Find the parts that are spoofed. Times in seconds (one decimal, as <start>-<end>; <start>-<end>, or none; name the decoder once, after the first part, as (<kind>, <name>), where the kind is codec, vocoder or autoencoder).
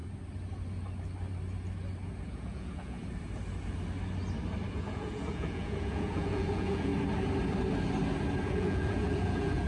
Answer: 2.3-3.0 (vocoder, Vocos); 4.7-6.9; 8.5-9.7